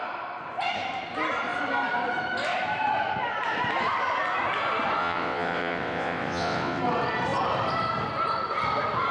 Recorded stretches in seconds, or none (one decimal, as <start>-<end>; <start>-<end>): 0.0-5.0; 6.8-9.1